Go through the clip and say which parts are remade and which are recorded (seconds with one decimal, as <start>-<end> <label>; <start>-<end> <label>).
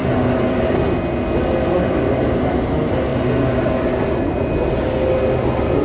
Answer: 0.0-5.8 recorded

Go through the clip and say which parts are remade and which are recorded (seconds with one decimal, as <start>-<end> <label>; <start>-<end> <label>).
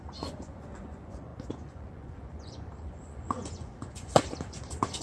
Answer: 0.0-5.0 remade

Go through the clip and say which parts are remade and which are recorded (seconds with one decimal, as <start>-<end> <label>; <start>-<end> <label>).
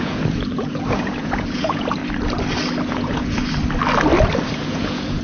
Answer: 0.0-2.0 remade; 2.0-2.9 recorded; 2.9-3.4 remade; 3.4-4.4 recorded; 4.4-5.2 remade